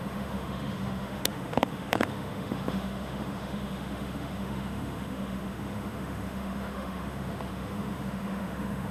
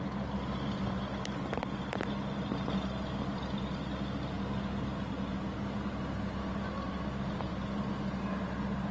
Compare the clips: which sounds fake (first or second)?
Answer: first